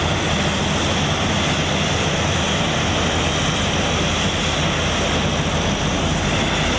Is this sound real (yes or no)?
yes